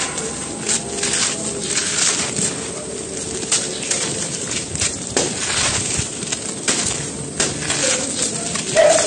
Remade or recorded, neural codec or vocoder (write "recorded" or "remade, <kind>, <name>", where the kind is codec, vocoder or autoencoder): recorded